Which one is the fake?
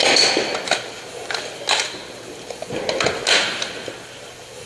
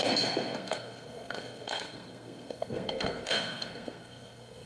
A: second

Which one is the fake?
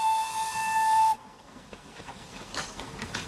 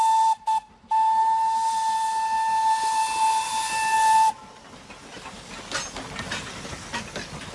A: first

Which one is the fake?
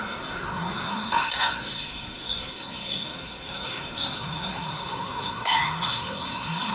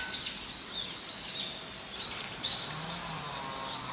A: first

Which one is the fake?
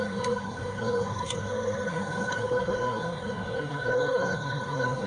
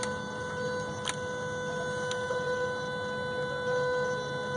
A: first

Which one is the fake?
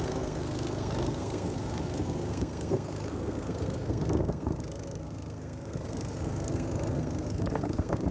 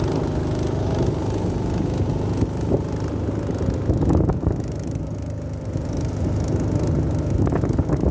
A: first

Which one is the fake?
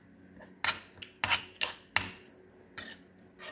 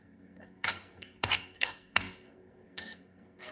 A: second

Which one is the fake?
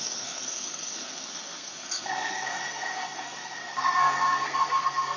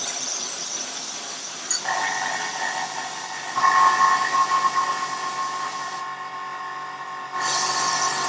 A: first